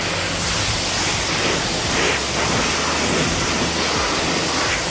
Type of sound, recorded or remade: recorded